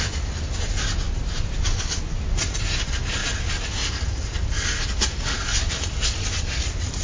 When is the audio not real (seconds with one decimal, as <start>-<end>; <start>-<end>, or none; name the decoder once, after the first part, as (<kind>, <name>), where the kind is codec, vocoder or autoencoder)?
none

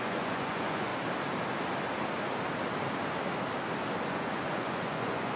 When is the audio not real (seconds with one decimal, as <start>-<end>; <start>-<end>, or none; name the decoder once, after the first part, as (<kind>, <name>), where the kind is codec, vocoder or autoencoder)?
0.0-0.9 (vocoder, Vocos); 4.1-5.4